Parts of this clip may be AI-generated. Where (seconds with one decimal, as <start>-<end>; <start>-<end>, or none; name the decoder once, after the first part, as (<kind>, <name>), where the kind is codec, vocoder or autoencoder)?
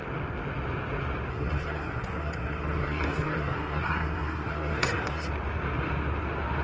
1.3-5.3 (codec, SNAC)